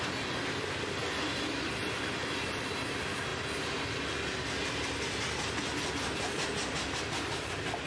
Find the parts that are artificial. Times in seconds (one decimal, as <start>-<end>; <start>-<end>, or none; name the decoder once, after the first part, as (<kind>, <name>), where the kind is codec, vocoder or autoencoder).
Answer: none